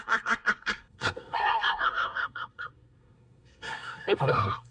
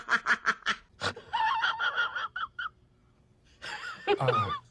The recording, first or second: second